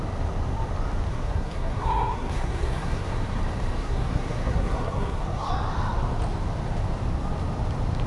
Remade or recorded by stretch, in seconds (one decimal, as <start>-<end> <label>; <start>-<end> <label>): 0.0-1.1 recorded; 1.1-3.4 remade; 3.4-3.8 recorded; 3.8-5.5 remade; 5.5-8.1 recorded